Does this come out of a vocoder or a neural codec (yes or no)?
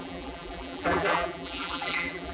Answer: yes